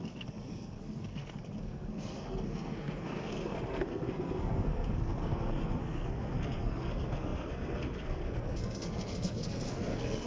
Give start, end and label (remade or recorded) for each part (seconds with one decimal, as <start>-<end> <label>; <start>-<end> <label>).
0.0-10.3 remade

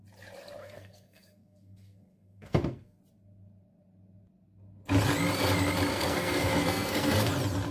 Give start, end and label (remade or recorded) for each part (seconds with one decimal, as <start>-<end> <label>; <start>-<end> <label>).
0.0-0.6 recorded; 0.6-3.0 remade; 3.0-5.9 recorded; 5.9-7.3 remade; 7.3-7.7 recorded

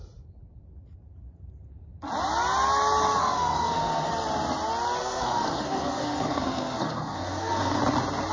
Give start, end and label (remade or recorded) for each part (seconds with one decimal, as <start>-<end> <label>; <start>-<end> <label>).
0.0-3.2 recorded; 3.2-4.1 remade; 4.1-5.0 recorded; 5.0-7.8 remade; 7.8-8.3 recorded